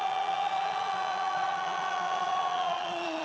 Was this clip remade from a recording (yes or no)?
yes